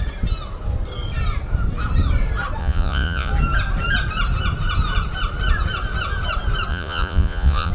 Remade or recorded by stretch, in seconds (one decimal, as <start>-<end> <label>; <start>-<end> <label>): 0.0-2.6 recorded; 2.6-3.3 remade; 3.3-6.7 recorded; 6.7-7.7 remade